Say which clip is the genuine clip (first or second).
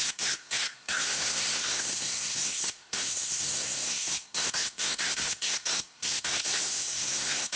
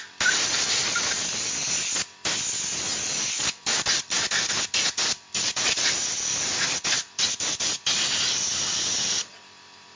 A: second